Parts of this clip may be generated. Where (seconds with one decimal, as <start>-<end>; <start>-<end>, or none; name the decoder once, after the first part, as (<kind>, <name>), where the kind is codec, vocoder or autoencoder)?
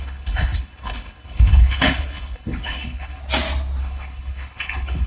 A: 0.0-3.2 (codec, HILCodec); 3.8-5.1